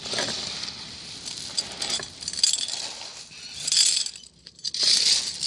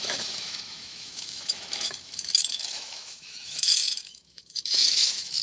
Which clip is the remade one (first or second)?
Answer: second